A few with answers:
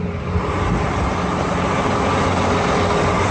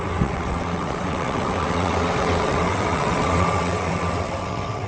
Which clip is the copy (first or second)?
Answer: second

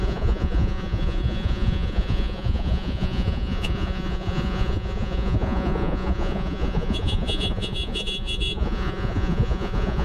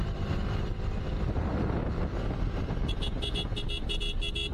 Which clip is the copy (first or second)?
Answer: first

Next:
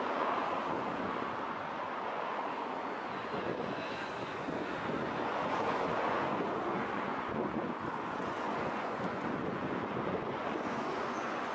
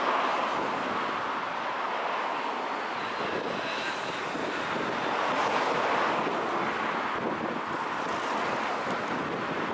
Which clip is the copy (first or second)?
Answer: first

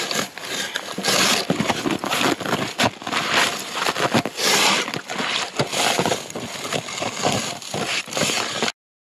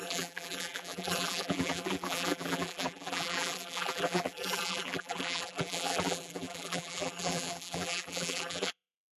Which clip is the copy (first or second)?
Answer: second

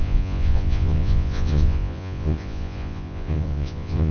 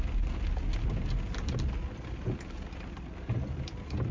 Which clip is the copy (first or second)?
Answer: first